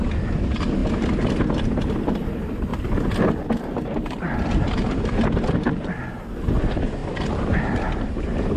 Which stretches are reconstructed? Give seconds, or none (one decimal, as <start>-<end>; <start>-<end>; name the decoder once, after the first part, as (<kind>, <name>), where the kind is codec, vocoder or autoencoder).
none